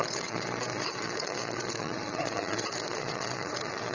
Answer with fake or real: fake